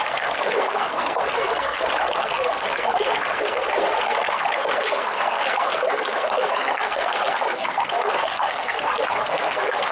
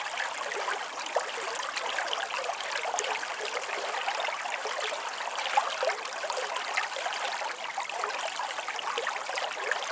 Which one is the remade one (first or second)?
first